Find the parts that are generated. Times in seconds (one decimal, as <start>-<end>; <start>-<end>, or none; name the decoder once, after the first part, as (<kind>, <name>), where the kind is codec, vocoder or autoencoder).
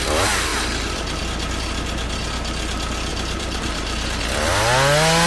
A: 0.5-1.2 (vocoder, BigVGAN v2); 3.1-4.2